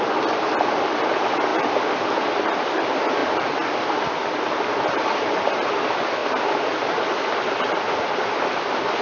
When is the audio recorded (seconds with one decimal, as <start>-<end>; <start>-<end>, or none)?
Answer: 0.0-1.5; 2.8-3.2; 5.8-9.0